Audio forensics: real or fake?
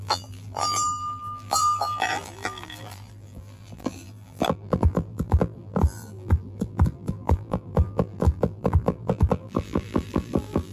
fake